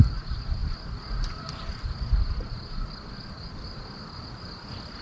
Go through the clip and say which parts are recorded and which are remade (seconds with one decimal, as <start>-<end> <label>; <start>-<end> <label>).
0.0-5.0 recorded